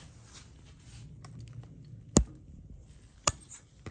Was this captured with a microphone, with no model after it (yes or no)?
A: yes